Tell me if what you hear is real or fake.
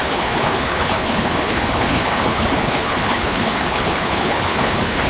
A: fake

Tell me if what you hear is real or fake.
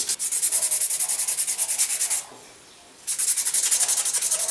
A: real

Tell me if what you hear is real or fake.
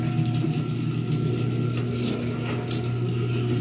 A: real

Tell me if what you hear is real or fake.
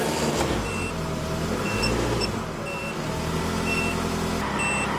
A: real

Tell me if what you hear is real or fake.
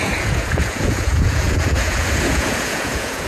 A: fake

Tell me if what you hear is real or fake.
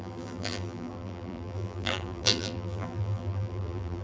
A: fake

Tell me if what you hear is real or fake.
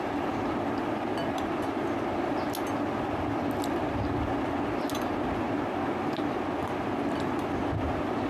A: real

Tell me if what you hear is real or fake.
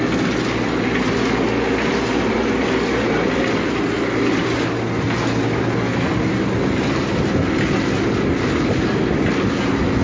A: real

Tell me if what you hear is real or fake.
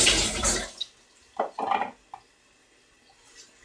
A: real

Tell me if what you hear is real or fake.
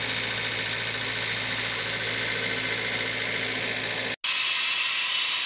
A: real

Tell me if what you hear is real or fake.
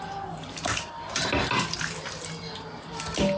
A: real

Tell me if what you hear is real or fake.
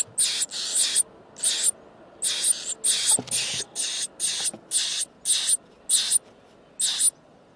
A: real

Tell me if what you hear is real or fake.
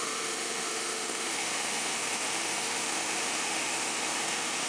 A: fake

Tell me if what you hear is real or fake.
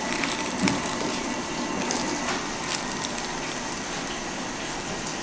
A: real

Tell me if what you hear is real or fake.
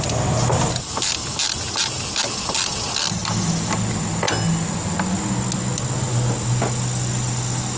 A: real